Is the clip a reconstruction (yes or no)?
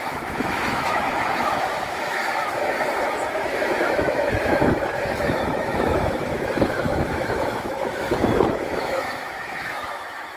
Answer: yes